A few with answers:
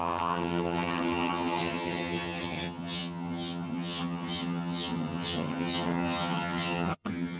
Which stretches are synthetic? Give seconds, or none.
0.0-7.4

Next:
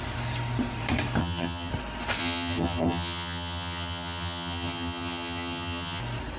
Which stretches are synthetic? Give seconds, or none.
1.2-1.7; 2.2-6.0